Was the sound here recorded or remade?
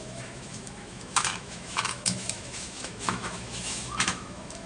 remade